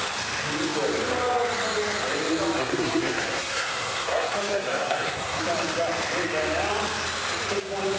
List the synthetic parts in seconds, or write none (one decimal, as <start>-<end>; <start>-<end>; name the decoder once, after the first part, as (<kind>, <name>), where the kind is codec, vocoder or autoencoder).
2.6-5.4 (codec, SNAC)